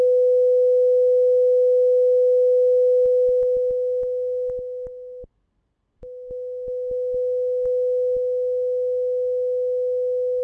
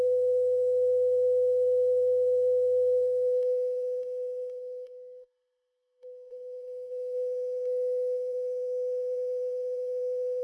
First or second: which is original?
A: first